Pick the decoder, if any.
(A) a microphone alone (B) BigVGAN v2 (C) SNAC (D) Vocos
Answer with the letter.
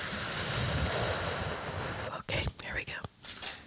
A